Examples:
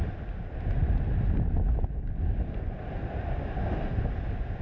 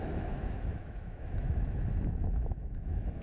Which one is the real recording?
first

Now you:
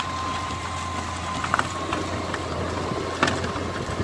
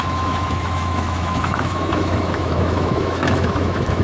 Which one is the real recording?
first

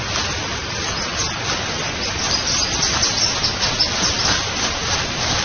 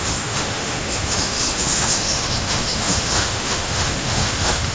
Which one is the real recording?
first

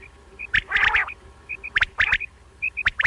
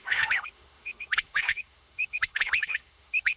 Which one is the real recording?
first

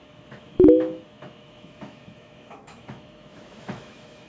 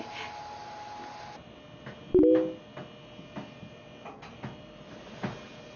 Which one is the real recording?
second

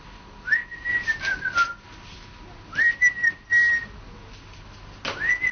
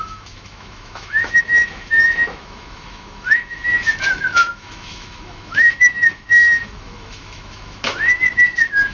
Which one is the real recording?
first